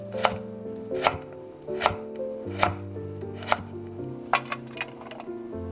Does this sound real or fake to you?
real